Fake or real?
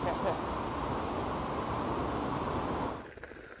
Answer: real